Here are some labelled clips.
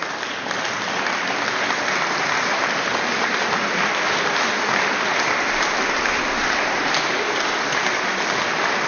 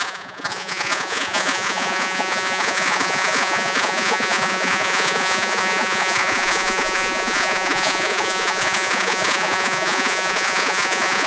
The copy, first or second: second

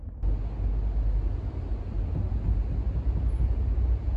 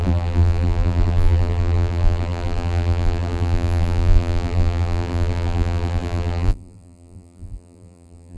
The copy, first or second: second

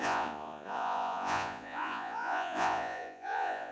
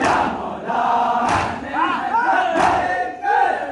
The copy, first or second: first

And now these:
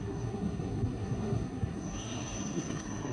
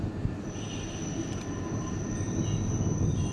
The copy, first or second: first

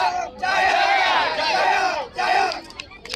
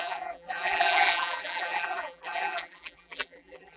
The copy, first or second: second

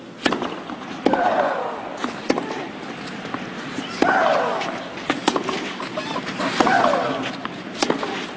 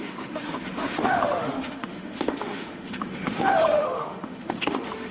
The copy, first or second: second